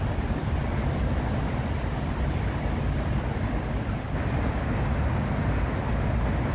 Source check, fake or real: real